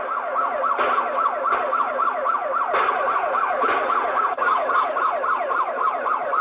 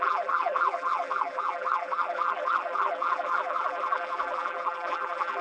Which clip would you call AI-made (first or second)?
second